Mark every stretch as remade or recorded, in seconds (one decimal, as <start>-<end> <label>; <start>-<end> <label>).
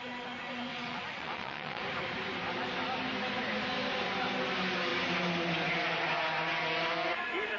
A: 0.0-0.7 recorded; 0.7-1.8 remade; 1.8-7.6 recorded